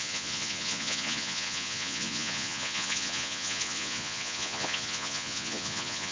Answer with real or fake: fake